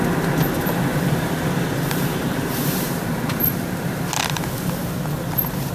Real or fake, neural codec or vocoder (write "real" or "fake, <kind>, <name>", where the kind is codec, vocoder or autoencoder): real